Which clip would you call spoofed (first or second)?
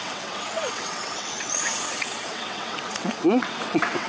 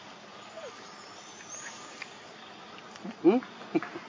first